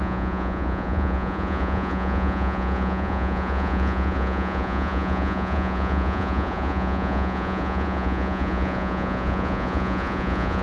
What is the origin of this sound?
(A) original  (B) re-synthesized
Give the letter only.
B